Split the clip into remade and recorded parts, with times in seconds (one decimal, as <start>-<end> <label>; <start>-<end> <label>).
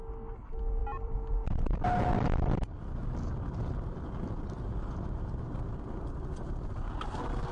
0.0-0.8 recorded; 0.8-1.8 remade; 1.8-7.5 recorded